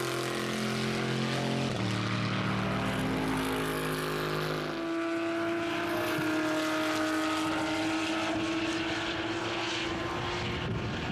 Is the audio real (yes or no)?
yes